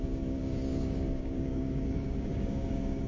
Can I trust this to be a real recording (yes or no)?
no